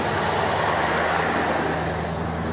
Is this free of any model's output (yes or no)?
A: yes